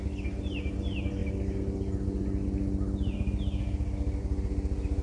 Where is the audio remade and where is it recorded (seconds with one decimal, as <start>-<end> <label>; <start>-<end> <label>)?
0.0-5.0 recorded